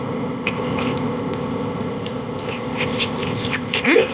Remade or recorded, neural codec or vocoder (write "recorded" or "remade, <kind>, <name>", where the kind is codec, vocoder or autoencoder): remade, codec, ZipCodec